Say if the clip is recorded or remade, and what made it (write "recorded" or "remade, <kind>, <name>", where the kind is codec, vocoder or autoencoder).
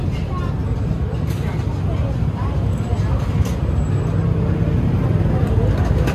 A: recorded